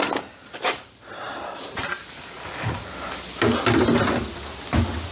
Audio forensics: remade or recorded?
recorded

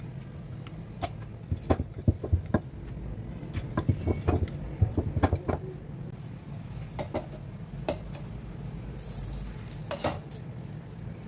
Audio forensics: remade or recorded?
recorded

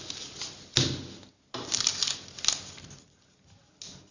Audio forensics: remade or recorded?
recorded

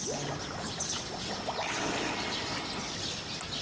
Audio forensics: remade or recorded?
recorded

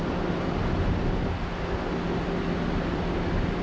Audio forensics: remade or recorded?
recorded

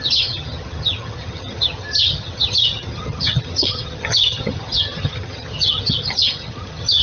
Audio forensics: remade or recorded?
remade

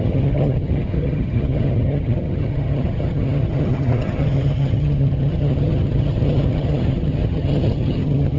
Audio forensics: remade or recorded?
remade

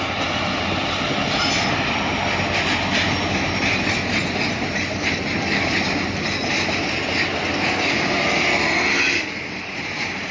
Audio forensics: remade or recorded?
recorded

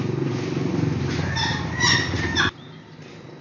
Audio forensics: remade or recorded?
recorded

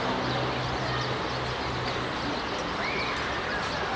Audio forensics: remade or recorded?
recorded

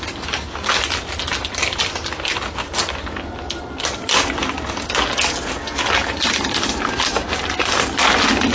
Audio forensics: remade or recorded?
recorded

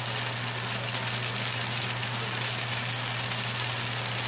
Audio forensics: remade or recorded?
recorded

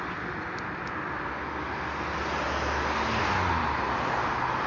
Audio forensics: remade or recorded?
recorded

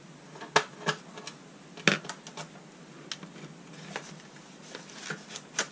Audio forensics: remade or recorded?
recorded